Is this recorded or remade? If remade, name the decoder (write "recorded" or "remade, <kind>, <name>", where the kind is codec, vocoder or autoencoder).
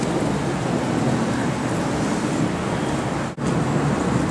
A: recorded